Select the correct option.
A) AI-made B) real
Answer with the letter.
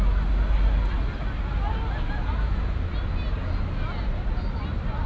B